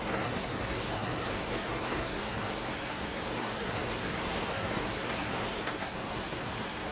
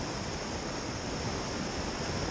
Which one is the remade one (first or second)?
first